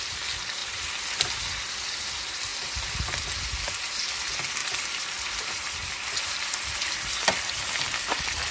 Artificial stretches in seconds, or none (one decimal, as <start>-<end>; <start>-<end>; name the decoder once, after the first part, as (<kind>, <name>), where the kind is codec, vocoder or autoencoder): 0.6-1.3 (vocoder, BigVGAN v2); 4.6-7.1